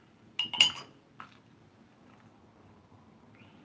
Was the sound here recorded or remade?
recorded